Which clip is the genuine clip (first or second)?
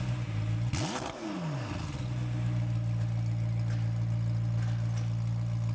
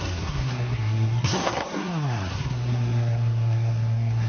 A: first